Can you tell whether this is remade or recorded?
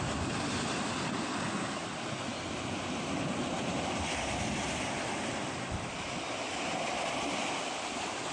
recorded